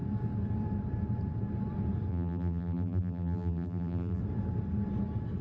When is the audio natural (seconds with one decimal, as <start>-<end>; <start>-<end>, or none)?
0.0-2.1; 4.2-5.4